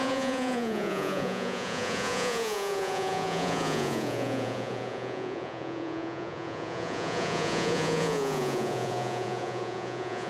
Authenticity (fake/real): fake